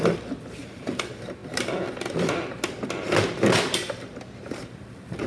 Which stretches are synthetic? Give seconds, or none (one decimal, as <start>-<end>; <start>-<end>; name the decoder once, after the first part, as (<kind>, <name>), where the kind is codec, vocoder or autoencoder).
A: 0.0-1.4 (vocoder, BigVGAN v2); 4.5-5.3